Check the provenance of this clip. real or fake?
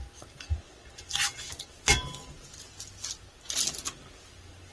real